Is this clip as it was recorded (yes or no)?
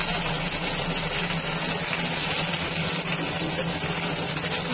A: yes